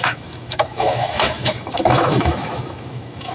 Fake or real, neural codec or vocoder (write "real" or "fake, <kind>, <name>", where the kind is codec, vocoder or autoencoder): fake, autoencoder, DAC-VAE